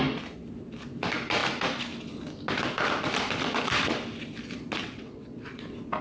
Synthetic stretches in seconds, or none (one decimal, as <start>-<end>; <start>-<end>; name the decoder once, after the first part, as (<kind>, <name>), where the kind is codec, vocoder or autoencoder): 4.8-5.6 (vocoder, WaveNeXt)